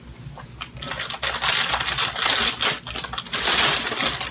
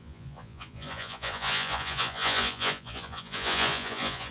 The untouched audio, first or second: first